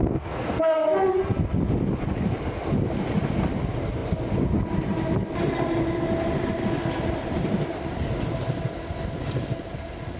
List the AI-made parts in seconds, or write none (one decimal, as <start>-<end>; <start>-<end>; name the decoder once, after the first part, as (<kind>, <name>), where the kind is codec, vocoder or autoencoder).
0.0-1.1 (codec, SNAC)